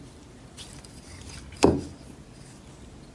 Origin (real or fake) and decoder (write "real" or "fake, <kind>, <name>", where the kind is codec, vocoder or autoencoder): real